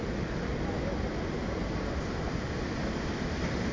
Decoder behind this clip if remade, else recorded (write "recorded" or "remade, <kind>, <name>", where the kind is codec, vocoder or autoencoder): recorded